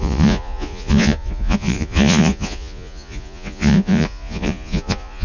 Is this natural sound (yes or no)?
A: no